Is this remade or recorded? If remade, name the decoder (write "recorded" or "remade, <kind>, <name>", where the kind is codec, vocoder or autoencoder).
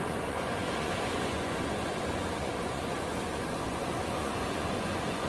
remade, vocoder, Vocos